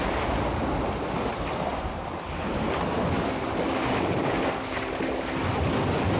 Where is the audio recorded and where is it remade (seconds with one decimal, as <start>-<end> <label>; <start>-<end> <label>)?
0.0-6.2 recorded